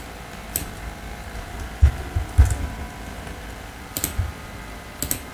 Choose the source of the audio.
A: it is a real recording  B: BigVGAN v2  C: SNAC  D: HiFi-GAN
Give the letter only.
A